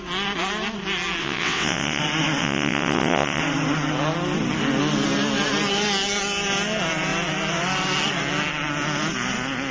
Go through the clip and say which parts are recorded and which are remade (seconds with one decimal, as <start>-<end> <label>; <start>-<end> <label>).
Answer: 0.0-1.2 recorded; 1.2-2.0 remade; 2.0-2.4 recorded; 2.4-3.4 remade; 3.4-9.7 recorded